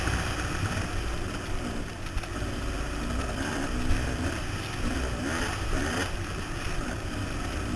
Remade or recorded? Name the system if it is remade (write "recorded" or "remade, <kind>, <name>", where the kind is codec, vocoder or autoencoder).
recorded